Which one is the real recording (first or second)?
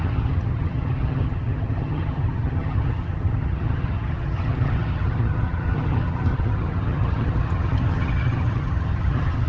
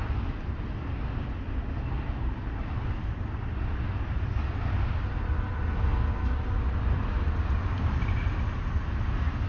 second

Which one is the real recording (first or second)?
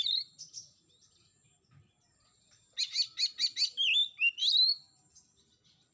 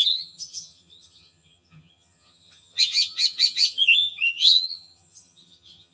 first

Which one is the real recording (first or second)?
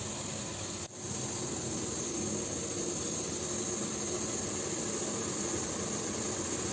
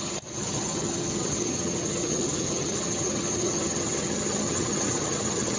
first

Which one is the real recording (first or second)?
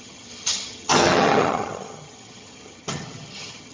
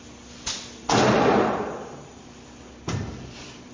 second